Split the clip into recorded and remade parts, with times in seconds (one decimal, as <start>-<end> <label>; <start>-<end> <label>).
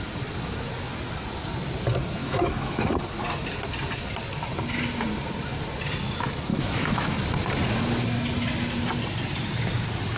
0.0-2.2 recorded; 2.2-2.8 remade; 2.8-6.5 recorded; 6.5-7.1 remade; 7.1-10.2 recorded